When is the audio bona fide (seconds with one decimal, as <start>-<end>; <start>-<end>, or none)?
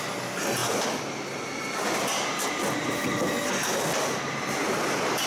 0.0-5.3